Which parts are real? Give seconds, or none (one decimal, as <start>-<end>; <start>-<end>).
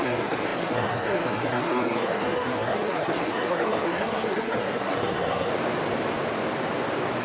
5.5-7.2